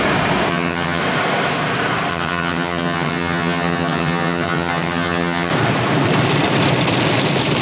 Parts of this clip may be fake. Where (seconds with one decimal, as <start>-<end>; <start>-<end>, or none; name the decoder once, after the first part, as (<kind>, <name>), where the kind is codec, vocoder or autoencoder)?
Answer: 0.5-1.0 (vocoder, HiFi-GAN); 2.1-5.5